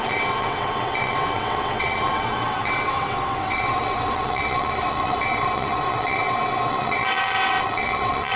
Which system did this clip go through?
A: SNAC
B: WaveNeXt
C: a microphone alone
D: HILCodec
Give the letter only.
B